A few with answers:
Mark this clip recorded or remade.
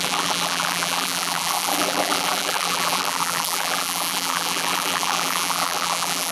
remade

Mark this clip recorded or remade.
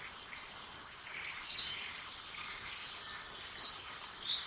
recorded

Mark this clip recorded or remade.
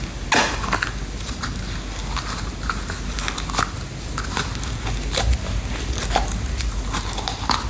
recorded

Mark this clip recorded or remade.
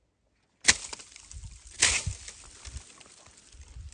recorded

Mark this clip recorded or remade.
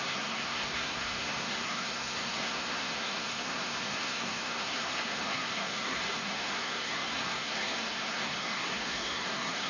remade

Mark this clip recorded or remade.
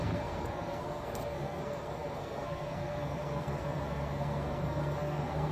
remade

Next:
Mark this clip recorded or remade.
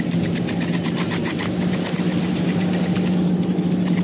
recorded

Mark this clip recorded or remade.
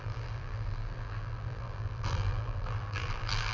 remade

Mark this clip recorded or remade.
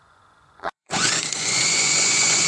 remade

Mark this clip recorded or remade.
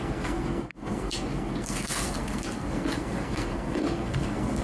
remade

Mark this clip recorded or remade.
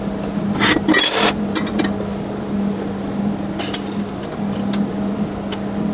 recorded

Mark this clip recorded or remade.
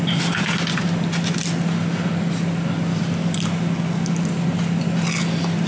recorded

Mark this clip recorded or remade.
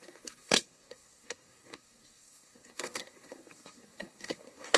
remade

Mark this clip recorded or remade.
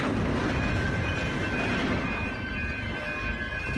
recorded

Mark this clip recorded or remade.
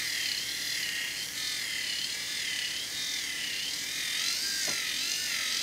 recorded